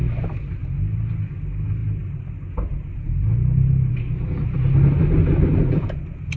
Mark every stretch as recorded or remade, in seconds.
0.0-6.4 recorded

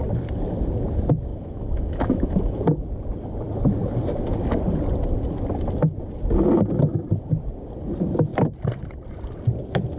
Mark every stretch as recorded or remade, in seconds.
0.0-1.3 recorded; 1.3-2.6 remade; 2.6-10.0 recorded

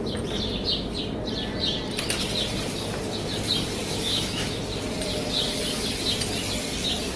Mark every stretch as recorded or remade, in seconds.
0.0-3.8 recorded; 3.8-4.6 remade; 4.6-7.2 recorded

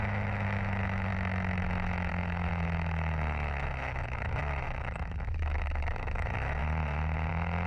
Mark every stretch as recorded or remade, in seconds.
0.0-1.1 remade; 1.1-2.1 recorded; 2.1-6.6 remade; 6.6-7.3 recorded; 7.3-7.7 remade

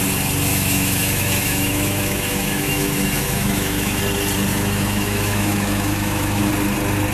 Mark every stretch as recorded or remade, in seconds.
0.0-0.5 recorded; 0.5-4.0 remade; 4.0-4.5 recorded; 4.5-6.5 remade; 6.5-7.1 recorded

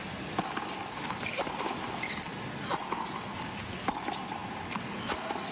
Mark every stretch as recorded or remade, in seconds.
0.0-5.5 recorded